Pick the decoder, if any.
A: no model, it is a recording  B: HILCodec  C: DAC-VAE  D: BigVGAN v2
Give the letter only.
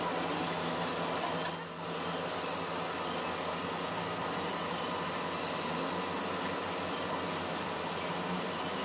A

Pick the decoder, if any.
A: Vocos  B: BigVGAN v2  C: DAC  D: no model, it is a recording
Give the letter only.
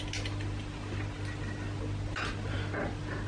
D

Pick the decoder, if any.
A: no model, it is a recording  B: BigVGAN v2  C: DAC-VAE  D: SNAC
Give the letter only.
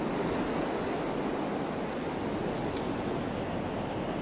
A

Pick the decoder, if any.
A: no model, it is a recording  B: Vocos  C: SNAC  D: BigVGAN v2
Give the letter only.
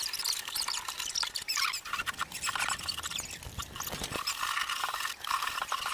D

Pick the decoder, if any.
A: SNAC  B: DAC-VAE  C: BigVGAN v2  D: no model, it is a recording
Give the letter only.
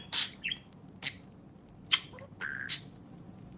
D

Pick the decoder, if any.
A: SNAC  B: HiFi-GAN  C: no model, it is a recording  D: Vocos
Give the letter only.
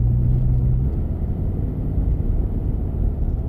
C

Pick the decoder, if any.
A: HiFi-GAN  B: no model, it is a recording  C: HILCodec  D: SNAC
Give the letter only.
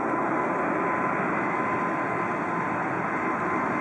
B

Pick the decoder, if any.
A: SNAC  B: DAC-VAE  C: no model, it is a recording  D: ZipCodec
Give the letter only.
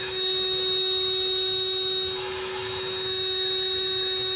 B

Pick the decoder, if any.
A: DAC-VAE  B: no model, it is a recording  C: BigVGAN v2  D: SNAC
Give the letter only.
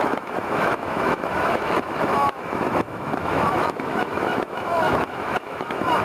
A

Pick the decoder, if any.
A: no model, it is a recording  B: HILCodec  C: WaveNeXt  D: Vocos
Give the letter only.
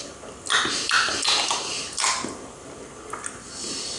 A